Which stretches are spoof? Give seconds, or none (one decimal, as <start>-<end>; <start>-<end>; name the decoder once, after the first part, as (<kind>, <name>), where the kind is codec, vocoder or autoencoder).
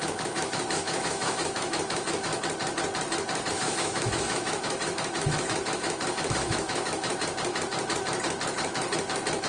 0.0-2.3 (autoencoder, DAC-VAE); 3.5-7.1